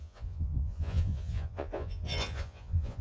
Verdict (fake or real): fake